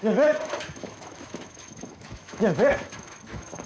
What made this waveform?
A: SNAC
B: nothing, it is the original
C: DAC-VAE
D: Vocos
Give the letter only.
C